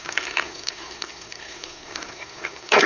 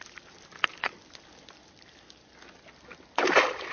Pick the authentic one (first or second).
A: second